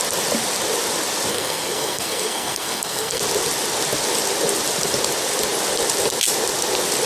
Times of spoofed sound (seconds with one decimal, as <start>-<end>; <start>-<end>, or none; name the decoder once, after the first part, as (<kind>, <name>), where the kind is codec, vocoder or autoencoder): 1.3-3.2 (codec, SNAC)